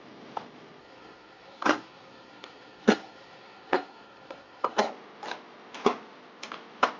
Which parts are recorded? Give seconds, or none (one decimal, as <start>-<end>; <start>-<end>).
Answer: 0.0-0.8; 4.9-7.0